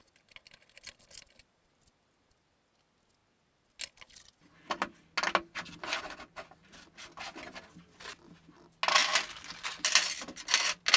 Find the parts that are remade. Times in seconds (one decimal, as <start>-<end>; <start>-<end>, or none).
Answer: none

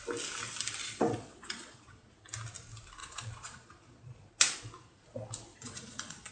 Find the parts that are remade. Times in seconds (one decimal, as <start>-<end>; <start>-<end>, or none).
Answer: 0.8-2.2; 3.0-4.3; 5.5-6.3

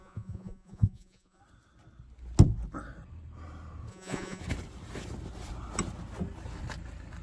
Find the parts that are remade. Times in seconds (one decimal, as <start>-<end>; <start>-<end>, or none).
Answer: 0.0-1.4; 3.9-4.4